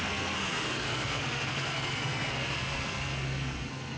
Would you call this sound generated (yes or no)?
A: yes